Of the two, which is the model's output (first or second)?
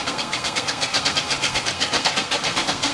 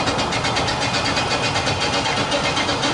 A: first